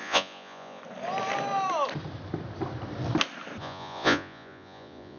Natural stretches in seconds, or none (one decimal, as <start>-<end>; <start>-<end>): 0.8-3.6